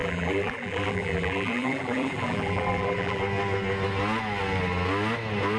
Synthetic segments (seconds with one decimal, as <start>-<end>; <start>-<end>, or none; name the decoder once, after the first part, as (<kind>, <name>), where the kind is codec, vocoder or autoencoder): 0.0-3.2 (vocoder, BigVGAN v2)